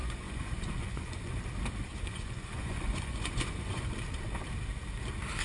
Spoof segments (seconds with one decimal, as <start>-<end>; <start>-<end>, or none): 0.0-1.4; 1.9-3.9